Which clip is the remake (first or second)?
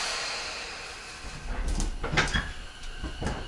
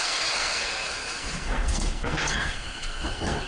second